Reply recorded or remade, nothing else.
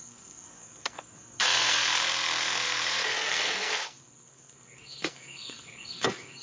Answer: remade